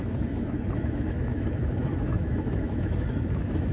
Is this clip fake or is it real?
fake